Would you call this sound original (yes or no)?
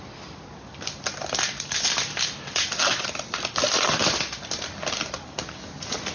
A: yes